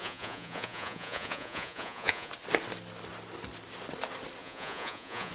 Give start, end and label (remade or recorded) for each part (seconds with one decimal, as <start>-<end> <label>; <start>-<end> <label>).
0.0-2.3 remade; 2.3-4.4 recorded; 4.4-5.3 remade